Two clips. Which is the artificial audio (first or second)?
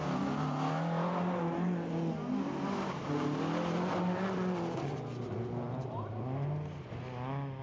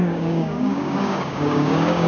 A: second